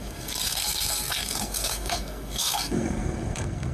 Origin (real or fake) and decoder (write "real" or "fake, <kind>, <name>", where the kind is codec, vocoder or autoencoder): fake, codec, SNAC